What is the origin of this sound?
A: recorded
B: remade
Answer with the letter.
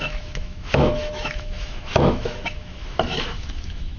B